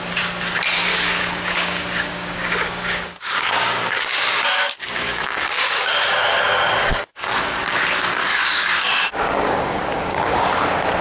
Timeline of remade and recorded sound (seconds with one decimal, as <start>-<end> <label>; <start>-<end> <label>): 0.0-0.9 recorded; 0.9-6.1 remade; 6.1-6.9 recorded; 6.9-7.6 remade; 7.6-8.2 recorded; 8.2-10.4 remade; 10.4-11.0 recorded